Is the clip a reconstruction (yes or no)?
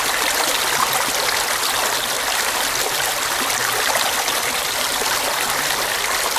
no